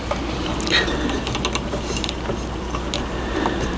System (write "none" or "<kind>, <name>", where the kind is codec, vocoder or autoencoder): none